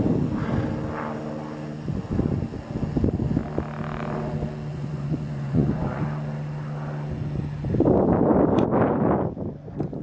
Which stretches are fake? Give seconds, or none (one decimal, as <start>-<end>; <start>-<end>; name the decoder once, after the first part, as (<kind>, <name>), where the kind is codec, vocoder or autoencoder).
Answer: 4.7-6.0 (vocoder, Vocos)